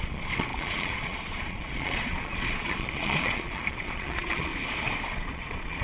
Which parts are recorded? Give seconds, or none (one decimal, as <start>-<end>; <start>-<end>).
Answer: 4.5-5.1